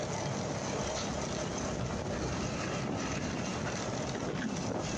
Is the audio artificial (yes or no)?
no